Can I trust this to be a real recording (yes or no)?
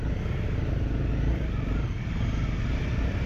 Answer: yes